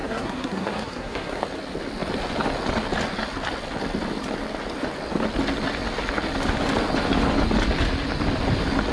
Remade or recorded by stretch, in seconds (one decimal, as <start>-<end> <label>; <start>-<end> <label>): 0.0-1.4 remade; 1.4-8.9 recorded